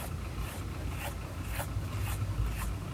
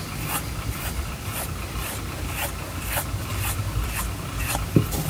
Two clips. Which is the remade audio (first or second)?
second